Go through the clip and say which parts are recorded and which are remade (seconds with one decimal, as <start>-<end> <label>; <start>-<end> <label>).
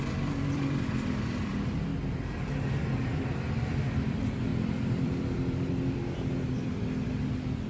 0.0-1.9 remade; 1.9-3.6 recorded; 3.6-7.7 remade